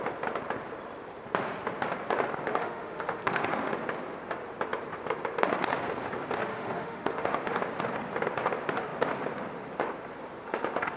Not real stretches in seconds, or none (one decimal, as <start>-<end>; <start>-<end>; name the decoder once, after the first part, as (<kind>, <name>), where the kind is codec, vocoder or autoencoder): 2.5-3.7 (autoencoder, DAC-VAE); 6.5-7.6